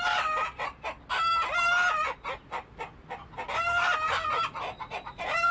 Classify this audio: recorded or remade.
recorded